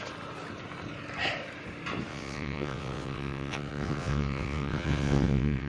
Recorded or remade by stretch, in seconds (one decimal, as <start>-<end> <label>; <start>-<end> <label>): 0.0-2.1 recorded; 2.1-5.7 remade